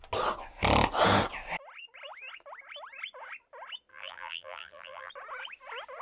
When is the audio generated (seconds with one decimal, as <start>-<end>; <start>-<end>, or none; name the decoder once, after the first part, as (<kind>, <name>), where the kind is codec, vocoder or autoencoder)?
3.9-5.1 (vocoder, BigVGAN v2)